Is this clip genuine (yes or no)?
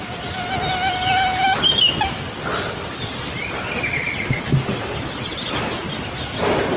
yes